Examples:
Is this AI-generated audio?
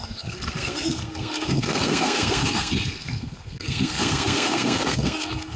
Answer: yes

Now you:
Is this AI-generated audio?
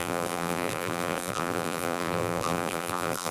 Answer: yes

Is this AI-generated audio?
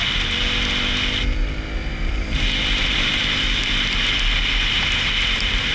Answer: no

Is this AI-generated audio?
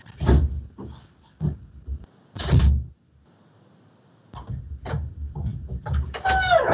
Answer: no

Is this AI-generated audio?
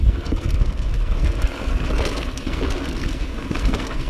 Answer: yes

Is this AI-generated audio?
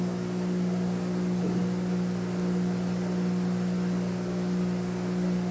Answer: no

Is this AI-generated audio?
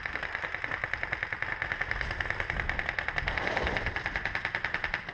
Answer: no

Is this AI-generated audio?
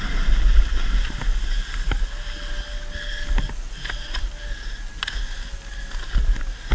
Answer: no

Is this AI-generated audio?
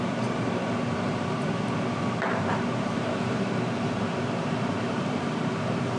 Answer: yes